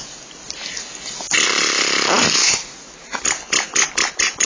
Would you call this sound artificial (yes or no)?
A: no